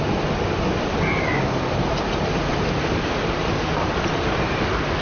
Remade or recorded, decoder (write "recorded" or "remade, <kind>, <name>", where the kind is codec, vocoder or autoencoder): recorded